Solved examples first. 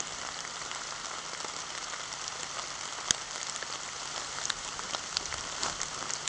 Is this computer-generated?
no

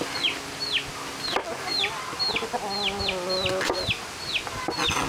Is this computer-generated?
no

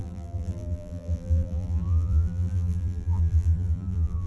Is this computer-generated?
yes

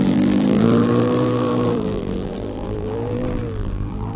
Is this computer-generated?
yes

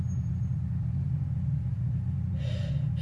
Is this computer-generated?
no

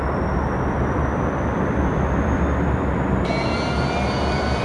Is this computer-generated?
yes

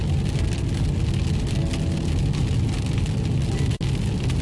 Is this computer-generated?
no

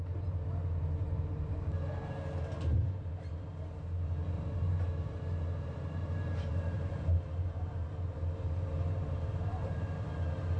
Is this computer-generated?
yes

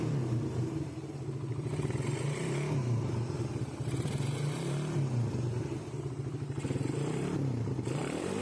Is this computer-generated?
yes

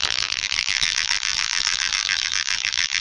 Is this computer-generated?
yes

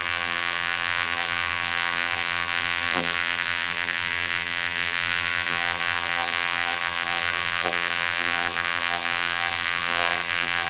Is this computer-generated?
yes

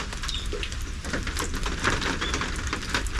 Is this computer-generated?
no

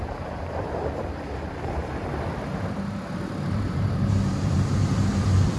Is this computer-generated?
yes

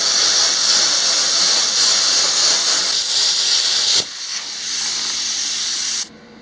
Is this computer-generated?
no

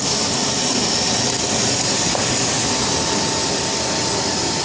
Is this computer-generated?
no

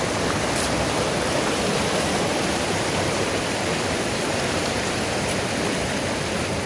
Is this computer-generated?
yes